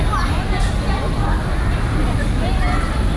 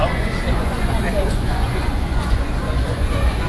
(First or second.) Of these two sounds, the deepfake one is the second